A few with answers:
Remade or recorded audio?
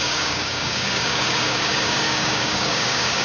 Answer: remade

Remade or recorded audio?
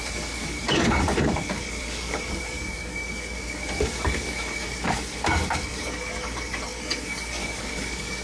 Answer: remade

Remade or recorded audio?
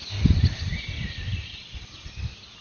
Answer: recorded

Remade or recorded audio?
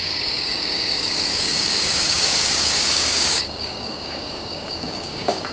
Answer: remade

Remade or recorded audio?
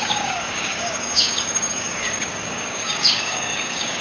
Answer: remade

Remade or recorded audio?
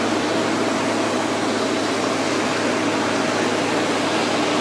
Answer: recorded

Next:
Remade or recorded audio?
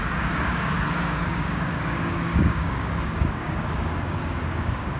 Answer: remade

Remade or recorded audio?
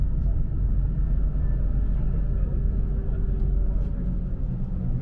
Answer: recorded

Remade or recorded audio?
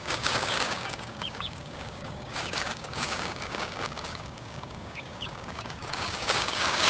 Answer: remade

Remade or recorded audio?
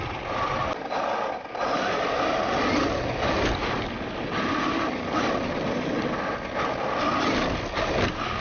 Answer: recorded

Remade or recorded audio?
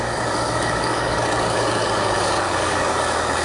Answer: remade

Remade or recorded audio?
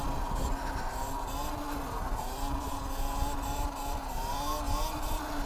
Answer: recorded